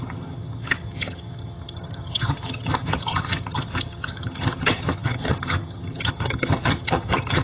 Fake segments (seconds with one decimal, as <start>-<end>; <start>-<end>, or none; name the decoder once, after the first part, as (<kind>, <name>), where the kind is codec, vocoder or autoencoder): 0.0-7.4 (vocoder, HiFi-GAN)